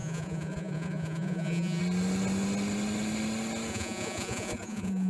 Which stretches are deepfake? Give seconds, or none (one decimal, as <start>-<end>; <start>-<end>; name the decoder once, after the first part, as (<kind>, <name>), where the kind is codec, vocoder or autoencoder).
0.0-1.8 (vocoder, Vocos); 3.7-5.1